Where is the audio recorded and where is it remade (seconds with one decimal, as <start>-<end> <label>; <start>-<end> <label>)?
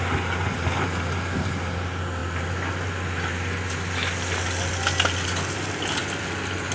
0.0-6.7 recorded